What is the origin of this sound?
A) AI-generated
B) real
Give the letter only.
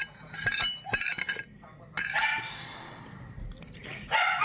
B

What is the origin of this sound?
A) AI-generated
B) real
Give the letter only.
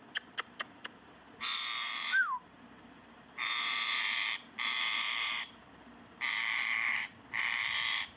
A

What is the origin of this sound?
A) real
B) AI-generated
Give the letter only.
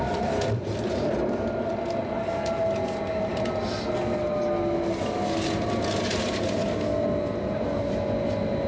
A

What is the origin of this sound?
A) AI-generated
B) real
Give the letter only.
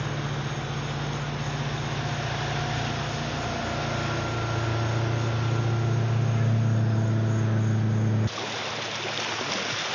B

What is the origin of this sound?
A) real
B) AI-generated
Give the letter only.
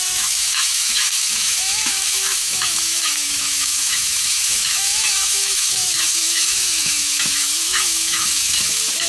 B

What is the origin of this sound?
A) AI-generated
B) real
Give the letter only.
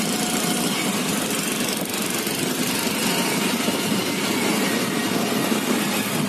B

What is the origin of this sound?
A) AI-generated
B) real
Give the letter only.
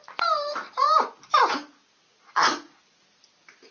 B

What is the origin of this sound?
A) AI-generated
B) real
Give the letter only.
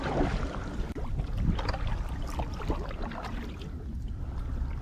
B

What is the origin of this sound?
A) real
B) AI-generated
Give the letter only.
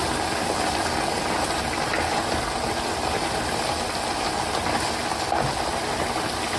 A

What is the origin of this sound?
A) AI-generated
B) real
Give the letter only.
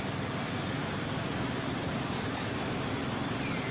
B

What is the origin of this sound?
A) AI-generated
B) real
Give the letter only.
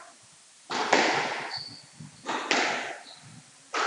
B